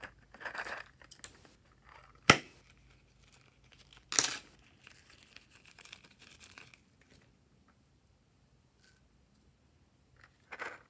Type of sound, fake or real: real